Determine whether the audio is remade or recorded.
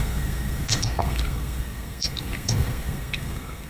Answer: remade